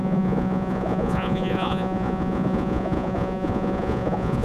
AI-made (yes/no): yes